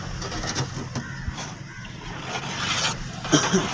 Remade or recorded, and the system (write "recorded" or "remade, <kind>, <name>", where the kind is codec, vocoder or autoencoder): recorded